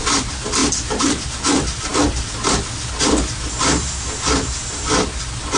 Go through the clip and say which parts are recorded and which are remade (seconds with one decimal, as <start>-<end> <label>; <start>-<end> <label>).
0.0-5.6 recorded